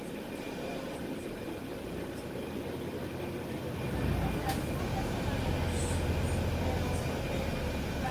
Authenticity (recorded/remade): recorded